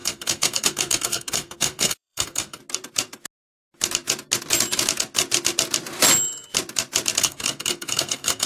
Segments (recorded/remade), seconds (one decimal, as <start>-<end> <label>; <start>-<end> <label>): 0.0-2.6 remade; 2.6-7.2 recorded; 7.2-8.5 remade